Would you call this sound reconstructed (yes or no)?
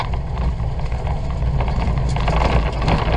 no